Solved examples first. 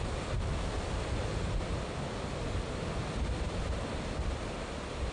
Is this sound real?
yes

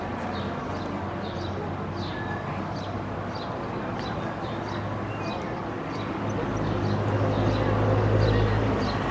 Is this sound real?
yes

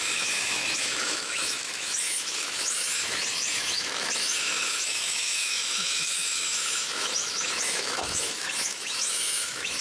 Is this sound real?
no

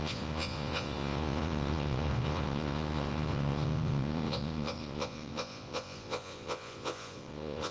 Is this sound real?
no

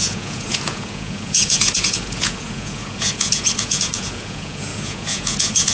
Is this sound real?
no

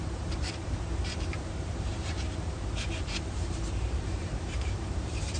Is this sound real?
no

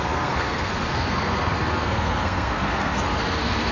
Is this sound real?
no